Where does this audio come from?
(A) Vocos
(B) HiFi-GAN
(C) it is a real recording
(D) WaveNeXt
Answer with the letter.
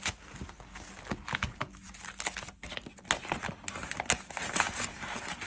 C